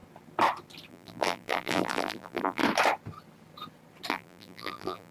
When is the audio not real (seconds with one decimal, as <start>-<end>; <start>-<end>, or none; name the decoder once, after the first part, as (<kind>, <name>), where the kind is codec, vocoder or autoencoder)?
0.9-2.6 (vocoder, BigVGAN v2); 4.1-5.1